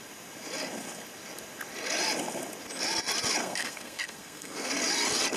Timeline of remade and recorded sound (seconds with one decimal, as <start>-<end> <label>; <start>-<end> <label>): 0.0-3.4 recorded; 3.4-4.7 remade; 4.7-5.4 recorded

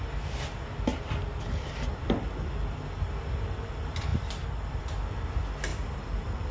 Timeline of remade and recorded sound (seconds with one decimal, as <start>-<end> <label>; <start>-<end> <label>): 0.0-4.1 recorded; 4.1-4.8 remade; 4.8-5.7 recorded; 5.7-6.5 remade